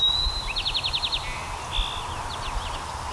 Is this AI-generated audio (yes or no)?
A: no